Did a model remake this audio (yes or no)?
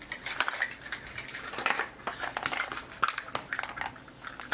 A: no